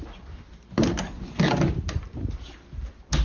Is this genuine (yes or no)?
yes